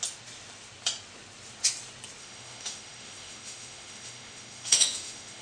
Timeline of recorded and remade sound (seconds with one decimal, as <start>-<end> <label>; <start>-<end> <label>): 0.0-2.2 recorded; 2.2-5.4 remade